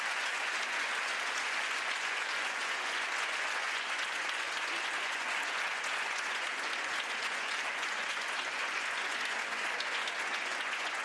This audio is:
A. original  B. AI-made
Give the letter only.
B